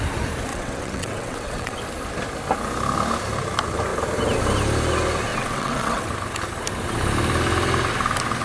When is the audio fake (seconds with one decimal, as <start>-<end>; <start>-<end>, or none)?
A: 0.5-1.8; 5.3-6.1